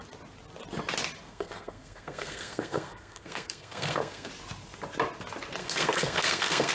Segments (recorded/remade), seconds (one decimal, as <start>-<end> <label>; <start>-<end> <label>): 0.0-1.2 recorded; 1.2-4.3 remade; 4.3-5.6 recorded; 5.6-6.7 remade